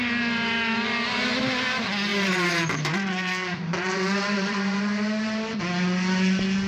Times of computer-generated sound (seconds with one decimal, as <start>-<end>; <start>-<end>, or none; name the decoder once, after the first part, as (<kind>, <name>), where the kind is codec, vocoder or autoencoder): 2.1-5.6 (vocoder, BigVGAN v2)